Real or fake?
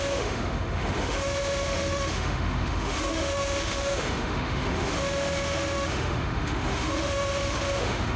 fake